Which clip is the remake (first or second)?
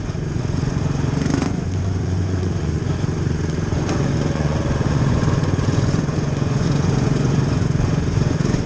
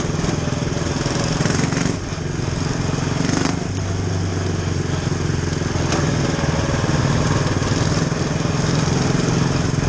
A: first